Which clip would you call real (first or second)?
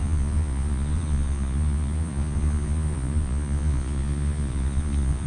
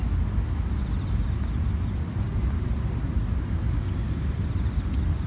second